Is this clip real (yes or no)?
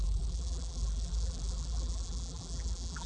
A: no